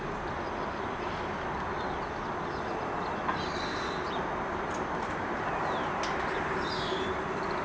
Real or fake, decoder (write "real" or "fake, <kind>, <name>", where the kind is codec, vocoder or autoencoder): real